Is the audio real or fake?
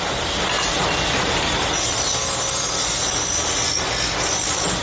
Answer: real